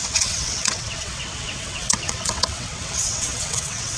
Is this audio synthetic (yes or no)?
yes